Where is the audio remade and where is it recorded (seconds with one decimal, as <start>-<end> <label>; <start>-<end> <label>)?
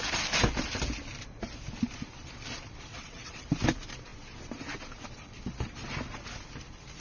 0.0-2.9 recorded; 2.9-3.4 remade; 3.4-7.0 recorded